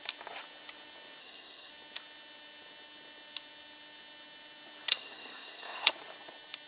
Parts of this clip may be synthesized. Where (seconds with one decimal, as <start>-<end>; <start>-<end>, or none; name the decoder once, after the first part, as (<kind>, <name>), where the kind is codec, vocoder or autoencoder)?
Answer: 1.2-1.7 (codec, SNAC); 4.9-5.9